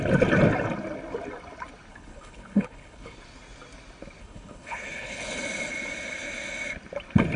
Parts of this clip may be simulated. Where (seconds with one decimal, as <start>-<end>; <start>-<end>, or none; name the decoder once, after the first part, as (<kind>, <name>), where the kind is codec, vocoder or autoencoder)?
1.9-3.2 (codec, HILCodec); 4.2-5.4